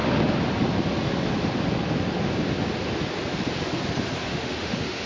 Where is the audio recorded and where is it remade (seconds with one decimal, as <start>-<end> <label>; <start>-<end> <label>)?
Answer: 0.0-4.3 recorded; 4.3-5.1 remade